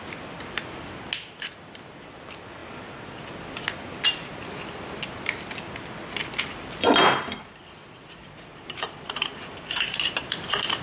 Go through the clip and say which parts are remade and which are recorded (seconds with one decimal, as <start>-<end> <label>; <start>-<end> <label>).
0.0-8.5 recorded; 8.5-9.3 remade; 9.3-10.8 recorded